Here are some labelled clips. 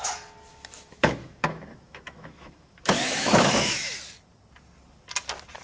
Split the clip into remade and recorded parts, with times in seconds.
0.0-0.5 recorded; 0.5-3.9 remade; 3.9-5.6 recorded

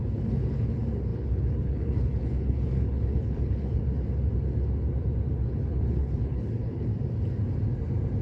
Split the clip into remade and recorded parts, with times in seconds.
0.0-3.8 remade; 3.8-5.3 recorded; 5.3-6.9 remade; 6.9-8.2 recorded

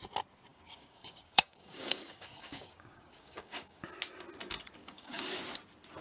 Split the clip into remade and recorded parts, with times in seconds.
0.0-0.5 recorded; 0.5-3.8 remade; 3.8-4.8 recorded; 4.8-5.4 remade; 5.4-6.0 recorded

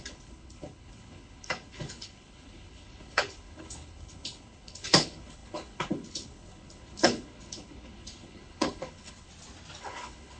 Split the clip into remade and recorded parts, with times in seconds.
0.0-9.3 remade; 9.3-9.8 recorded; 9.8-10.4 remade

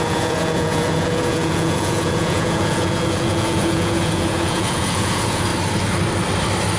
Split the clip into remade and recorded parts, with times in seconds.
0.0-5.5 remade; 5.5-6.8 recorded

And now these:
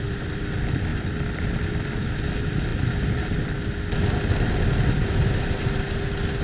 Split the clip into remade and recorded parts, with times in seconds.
0.0-6.4 recorded

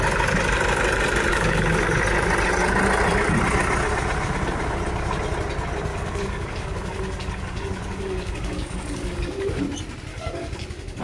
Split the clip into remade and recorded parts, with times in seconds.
0.0-1.3 recorded; 1.3-2.0 remade; 2.0-5.9 recorded; 5.9-9.6 remade; 9.6-10.1 recorded; 10.1-11.0 remade

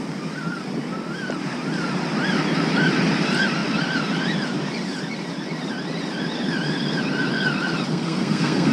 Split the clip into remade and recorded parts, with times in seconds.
0.0-7.9 recorded; 7.9-8.7 remade